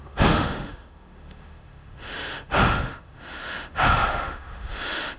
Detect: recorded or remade remade